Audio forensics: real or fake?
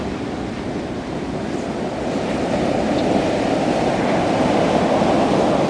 real